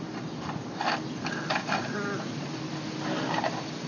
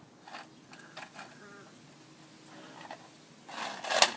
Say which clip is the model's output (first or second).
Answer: first